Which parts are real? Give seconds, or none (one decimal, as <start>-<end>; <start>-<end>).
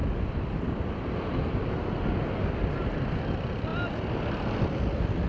0.0-3.2; 3.7-4.6